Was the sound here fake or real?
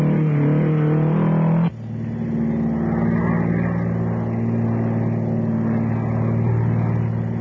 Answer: real